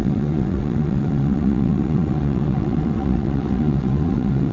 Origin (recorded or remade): remade